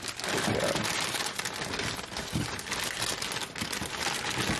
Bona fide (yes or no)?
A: yes